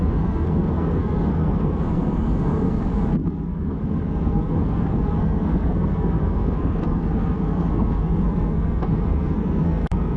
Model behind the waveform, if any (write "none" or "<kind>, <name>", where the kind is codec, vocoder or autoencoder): codec, SNAC